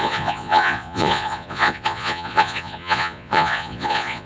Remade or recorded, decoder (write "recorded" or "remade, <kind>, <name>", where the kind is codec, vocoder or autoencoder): remade, vocoder, Vocos